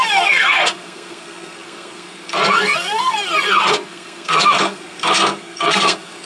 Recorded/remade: remade